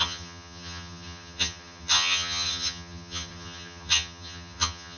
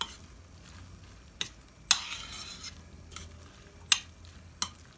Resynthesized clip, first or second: first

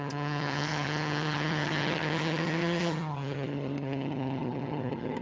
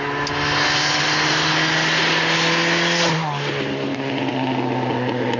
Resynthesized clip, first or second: first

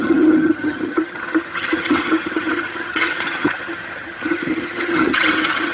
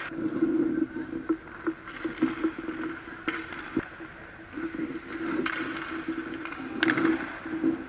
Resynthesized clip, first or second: first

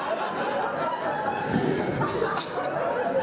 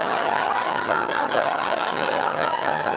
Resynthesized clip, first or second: second